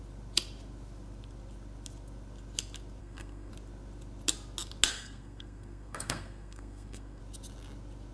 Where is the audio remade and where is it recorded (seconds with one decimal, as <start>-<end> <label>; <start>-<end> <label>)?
0.0-3.0 recorded; 3.0-3.5 remade; 3.5-4.9 recorded; 4.9-7.2 remade; 7.2-8.1 recorded